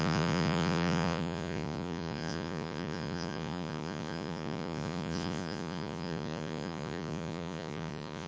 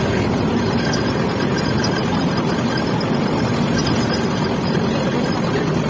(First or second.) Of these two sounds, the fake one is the first